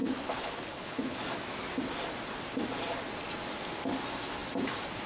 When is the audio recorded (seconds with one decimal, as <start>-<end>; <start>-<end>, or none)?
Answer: 1.2-5.1